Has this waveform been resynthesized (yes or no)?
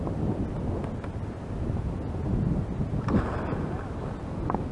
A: no